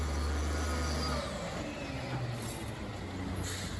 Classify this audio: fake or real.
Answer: real